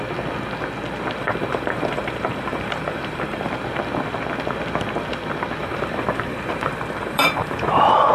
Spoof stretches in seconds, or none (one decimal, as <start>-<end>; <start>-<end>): 1.2-3.5; 5.6-8.1